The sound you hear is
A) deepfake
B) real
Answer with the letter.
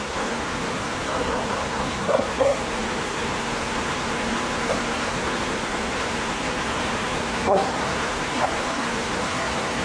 A